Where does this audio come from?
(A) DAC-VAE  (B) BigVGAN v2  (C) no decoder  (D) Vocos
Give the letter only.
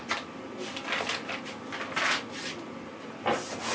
C